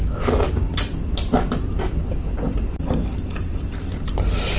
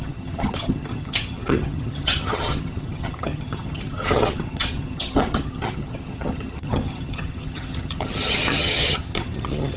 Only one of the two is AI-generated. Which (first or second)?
second